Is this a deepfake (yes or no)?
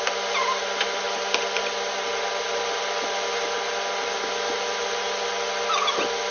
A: no